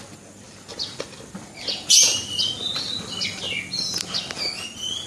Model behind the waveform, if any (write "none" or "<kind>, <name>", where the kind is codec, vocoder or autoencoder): none